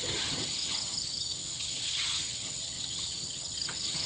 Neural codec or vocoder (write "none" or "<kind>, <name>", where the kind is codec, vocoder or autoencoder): vocoder, HiFi-GAN